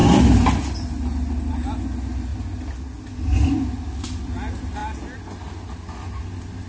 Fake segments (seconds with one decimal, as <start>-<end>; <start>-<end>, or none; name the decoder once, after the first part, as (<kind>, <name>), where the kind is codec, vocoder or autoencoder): none